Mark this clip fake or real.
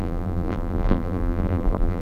fake